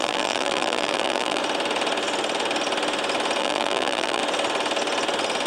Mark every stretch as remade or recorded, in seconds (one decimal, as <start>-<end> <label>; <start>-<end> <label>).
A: 0.0-1.4 remade; 1.4-3.4 recorded; 3.4-4.2 remade; 4.2-5.5 recorded